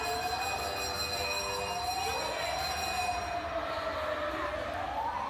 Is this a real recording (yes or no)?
yes